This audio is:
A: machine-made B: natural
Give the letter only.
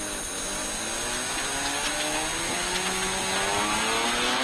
B